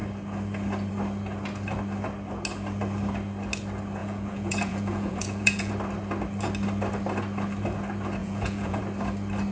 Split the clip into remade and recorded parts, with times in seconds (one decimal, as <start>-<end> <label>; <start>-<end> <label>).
0.0-4.0 recorded; 4.0-5.7 remade; 5.7-8.2 recorded; 8.2-8.8 remade; 8.8-9.5 recorded